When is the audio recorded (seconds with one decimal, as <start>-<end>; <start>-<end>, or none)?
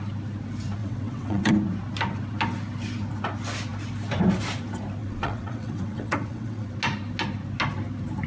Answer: 0.0-0.8; 1.5-5.0; 6.7-8.3